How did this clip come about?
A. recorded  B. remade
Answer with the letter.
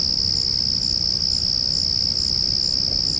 A